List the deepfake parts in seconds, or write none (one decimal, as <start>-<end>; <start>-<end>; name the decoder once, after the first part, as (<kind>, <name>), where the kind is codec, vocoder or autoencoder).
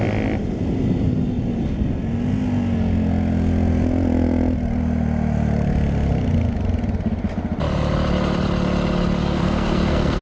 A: 9.2-10.2 (codec, SNAC)